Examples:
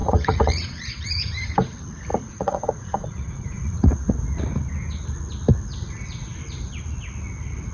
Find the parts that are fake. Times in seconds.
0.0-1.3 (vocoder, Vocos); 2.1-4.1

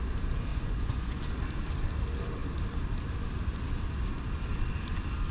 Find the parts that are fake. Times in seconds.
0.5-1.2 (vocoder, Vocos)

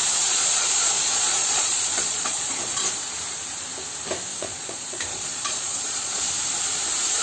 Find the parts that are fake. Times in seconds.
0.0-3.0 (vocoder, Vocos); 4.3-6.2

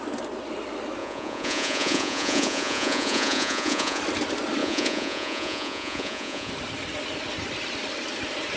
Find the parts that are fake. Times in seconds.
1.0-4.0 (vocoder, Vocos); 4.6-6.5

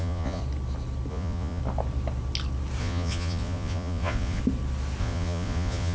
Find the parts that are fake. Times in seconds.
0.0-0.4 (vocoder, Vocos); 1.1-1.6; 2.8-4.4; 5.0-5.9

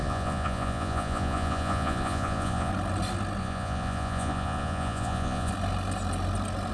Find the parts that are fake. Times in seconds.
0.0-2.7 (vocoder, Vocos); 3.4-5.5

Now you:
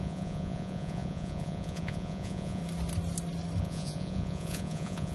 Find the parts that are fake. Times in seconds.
0.0-2.6 (vocoder, Vocos); 3.6-5.1

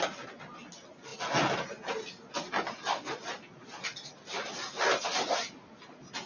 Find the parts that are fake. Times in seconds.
none